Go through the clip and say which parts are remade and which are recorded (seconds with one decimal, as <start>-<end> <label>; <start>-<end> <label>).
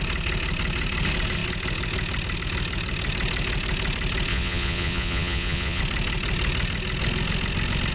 0.0-4.3 recorded; 4.3-5.8 remade; 5.8-7.9 recorded